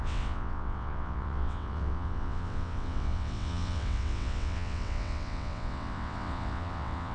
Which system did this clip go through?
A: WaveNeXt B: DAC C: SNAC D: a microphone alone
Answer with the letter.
A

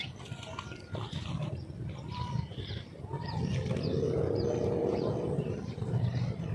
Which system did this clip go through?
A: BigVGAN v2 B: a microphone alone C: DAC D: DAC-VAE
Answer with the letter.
A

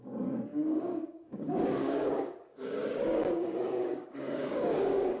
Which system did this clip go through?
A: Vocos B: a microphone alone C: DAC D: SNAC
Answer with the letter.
C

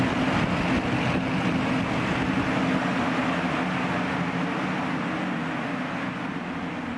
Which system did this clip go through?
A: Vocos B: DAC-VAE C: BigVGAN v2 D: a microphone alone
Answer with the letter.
D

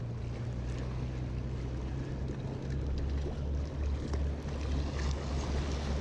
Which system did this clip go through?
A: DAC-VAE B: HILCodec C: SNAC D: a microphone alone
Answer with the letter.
D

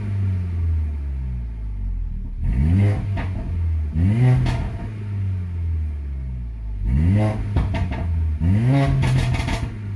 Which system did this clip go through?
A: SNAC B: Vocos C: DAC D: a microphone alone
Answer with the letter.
D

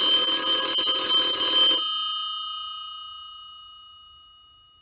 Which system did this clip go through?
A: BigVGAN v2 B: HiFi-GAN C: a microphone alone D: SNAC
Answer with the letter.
C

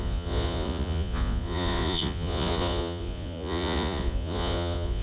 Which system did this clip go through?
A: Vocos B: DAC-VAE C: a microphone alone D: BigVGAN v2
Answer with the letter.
A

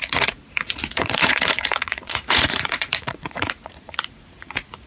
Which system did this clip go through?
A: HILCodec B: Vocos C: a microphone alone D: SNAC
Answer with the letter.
B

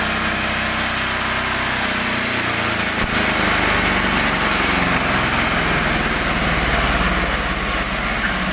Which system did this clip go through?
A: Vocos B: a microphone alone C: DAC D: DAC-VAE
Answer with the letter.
B